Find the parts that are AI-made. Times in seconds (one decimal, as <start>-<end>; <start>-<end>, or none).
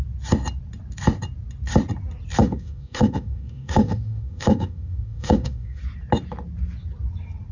2.4-5.8